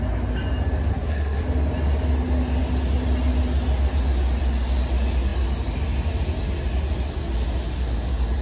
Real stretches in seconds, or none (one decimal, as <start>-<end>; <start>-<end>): 0.0-0.9; 1.4-8.4